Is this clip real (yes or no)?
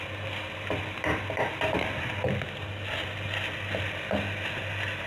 yes